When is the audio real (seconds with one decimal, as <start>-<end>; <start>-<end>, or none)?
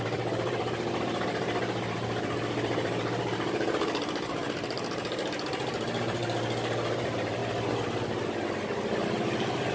6.2-7.0; 7.4-9.7